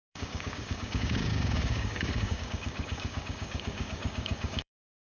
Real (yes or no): no